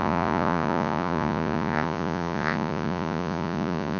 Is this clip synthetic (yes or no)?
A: yes